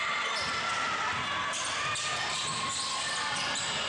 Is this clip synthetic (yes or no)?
no